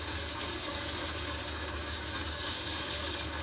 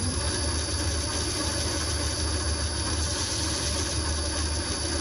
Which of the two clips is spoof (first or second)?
first